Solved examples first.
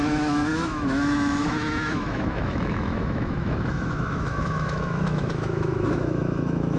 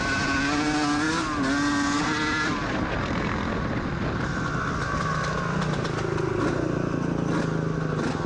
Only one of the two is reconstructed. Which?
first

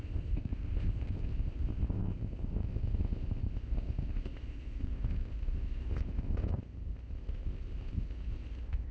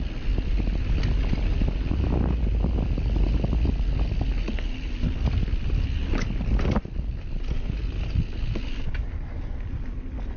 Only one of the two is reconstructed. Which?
first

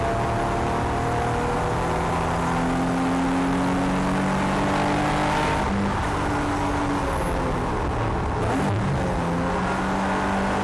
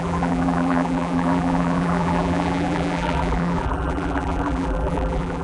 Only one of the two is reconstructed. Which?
second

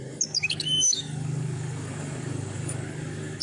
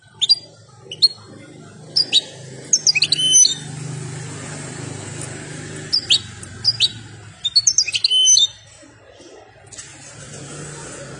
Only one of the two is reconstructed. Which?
first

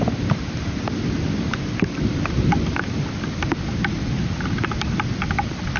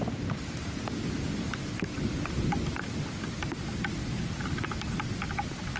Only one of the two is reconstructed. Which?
first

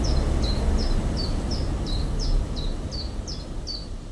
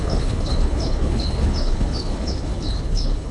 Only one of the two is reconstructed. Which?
second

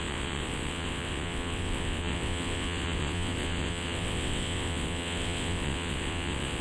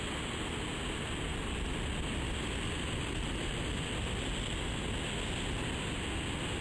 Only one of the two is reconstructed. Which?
first